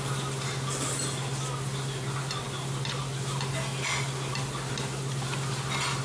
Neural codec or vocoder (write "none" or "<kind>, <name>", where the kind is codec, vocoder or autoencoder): none